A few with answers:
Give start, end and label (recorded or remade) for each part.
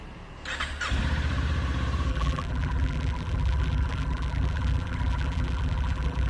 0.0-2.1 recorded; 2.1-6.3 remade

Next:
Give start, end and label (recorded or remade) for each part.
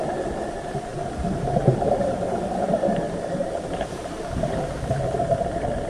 0.0-0.9 recorded; 0.9-4.4 remade; 4.4-5.9 recorded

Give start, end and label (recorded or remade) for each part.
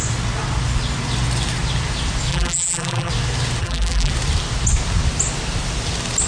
0.0-2.3 recorded; 2.3-3.1 remade; 3.1-3.6 recorded; 3.6-4.1 remade; 4.1-6.3 recorded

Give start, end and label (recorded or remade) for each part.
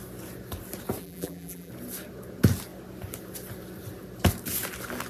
0.0-1.0 recorded; 1.0-1.7 remade; 1.7-5.1 recorded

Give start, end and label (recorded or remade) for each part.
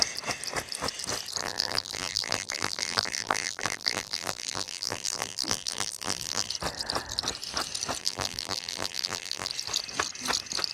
0.0-1.4 recorded; 1.4-6.5 remade; 6.5-8.0 recorded; 8.0-9.5 remade; 9.5-10.7 recorded